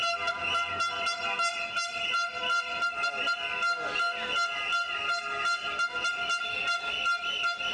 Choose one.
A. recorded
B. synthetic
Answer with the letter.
A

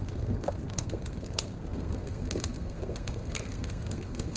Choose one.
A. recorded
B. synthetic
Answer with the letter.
B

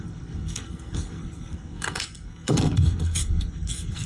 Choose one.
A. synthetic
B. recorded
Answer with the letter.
A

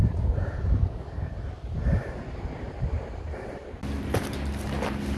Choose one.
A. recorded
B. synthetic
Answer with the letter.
A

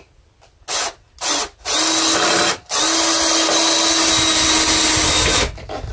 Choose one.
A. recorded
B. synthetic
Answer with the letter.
A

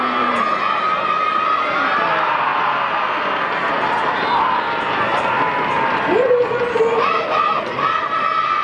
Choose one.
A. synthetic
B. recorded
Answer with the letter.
B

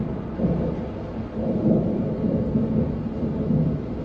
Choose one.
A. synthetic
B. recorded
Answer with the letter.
B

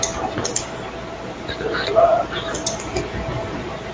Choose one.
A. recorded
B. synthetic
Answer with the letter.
A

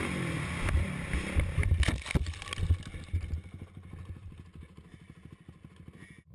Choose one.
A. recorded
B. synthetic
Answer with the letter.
A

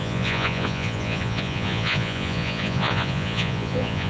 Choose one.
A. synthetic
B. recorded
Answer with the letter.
A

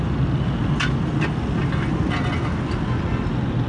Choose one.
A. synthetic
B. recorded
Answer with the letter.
B